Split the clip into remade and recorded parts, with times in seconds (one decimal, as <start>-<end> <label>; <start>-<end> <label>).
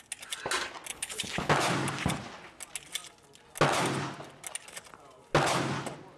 0.0-0.9 recorded; 0.9-1.5 remade; 1.5-6.2 recorded